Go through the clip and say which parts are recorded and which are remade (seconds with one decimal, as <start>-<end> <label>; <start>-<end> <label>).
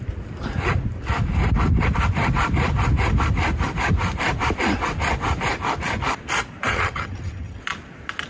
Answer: 0.0-6.7 recorded; 6.7-7.6 remade; 7.6-8.3 recorded